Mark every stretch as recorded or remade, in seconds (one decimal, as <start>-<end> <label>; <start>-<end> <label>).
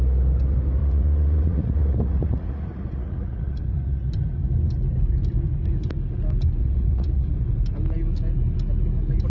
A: 0.0-0.8 recorded; 0.8-4.1 remade; 4.1-6.6 recorded; 6.6-7.3 remade; 7.3-9.3 recorded